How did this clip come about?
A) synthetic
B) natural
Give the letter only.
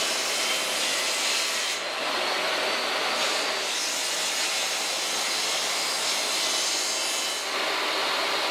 B